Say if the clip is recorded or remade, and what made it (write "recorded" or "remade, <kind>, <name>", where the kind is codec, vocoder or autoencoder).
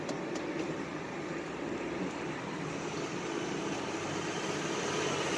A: recorded